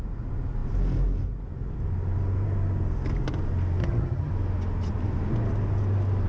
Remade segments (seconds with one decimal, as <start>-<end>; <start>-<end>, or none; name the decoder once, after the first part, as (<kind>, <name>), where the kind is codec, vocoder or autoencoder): 3.8-4.3 (vocoder, HiFi-GAN)